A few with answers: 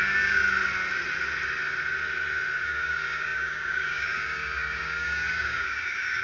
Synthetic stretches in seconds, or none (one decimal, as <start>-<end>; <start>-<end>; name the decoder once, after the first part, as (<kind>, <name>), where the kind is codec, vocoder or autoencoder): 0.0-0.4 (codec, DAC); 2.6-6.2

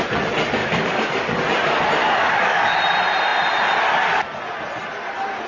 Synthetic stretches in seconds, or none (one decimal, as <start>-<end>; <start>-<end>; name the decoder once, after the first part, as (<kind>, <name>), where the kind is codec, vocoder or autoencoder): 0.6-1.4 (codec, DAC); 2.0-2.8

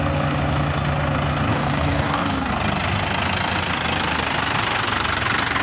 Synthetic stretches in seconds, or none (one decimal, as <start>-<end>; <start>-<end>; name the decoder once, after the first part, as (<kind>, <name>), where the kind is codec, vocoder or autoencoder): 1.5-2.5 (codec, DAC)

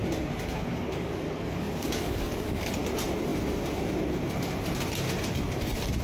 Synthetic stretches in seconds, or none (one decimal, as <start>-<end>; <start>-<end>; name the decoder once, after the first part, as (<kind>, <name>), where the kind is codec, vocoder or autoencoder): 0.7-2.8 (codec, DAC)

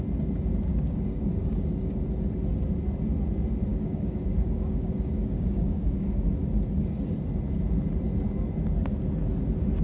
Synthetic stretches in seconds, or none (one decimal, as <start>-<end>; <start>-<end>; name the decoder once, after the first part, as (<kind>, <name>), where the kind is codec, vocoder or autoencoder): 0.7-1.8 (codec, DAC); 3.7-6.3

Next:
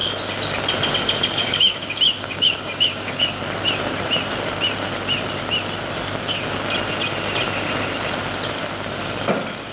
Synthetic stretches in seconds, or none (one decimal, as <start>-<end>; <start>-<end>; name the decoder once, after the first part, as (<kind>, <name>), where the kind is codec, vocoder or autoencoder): 1.4-3.4 (codec, DAC)